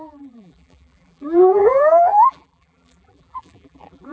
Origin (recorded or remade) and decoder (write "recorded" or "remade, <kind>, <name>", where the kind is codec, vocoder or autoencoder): remade, vocoder, BigVGAN v2